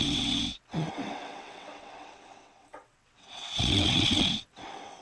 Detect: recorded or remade remade